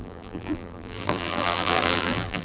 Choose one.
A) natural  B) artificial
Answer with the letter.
B